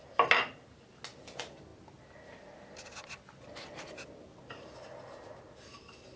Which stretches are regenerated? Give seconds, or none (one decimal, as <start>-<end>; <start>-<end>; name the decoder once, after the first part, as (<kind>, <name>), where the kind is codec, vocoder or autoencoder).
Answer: none